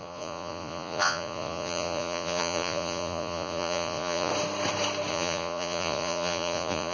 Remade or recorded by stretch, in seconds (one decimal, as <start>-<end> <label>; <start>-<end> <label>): 0.0-4.3 remade; 4.3-5.1 recorded; 5.1-6.9 remade